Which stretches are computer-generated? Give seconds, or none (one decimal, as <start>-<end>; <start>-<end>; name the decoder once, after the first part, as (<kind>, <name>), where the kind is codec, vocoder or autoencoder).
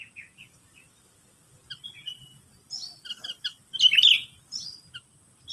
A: none